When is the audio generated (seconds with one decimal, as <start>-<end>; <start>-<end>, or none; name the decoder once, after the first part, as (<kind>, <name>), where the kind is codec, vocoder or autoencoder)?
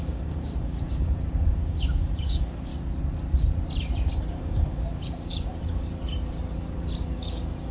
0.0-2.7 (codec, DAC); 4.3-5.5; 7.0-7.7